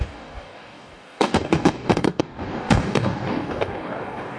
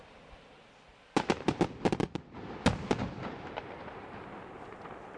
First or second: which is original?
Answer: second